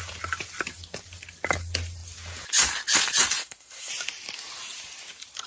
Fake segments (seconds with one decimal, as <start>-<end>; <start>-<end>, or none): 3.4-3.9